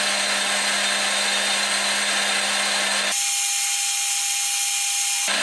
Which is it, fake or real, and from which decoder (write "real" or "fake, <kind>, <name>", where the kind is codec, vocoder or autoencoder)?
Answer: real